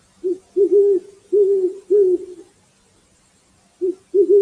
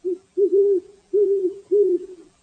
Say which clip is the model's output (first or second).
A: second